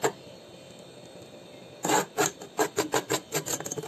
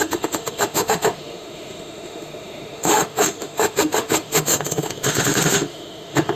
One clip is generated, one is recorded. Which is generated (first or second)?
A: second